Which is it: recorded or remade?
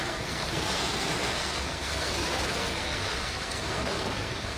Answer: remade